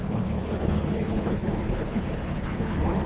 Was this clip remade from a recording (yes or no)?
yes